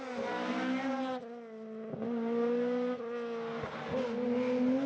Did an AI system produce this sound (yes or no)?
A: no